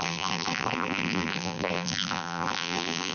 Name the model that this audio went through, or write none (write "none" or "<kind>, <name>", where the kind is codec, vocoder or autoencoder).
vocoder, BigVGAN v2